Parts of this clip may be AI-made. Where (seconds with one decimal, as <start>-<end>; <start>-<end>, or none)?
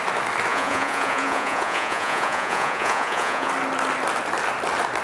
0.5-3.5